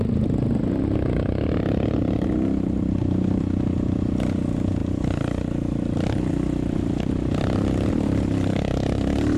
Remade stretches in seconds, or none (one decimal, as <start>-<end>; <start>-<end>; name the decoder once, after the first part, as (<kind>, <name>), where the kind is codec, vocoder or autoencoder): none